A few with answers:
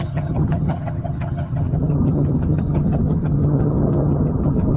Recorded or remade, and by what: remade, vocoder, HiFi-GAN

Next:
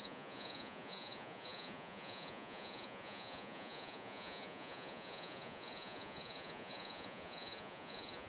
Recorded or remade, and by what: remade, vocoder, Vocos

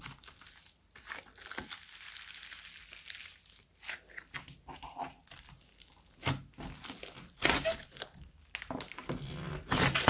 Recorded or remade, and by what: recorded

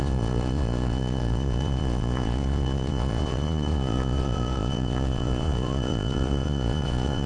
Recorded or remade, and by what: remade, vocoder, Vocos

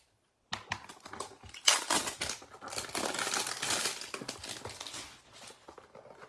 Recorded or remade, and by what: recorded